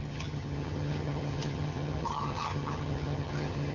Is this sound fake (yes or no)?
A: yes